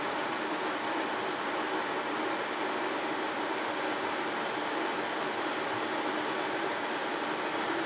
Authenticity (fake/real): real